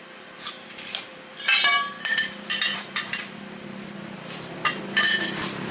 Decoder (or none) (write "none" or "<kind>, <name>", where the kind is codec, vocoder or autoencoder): none